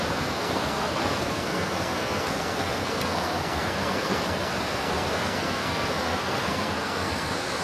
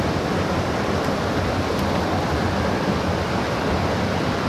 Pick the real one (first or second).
second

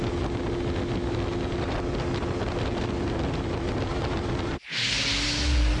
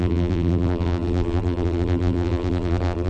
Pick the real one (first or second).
first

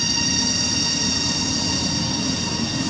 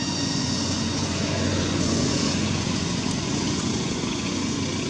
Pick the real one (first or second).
first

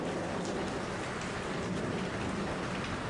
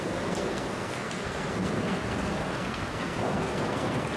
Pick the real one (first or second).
first